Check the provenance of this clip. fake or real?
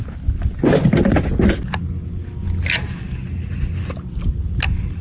real